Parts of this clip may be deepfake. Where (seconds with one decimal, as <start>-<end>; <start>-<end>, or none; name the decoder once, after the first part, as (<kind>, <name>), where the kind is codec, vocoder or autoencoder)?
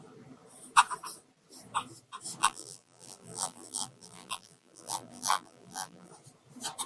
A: 2.4-6.1 (vocoder, BigVGAN v2)